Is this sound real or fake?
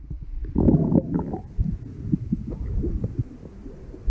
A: real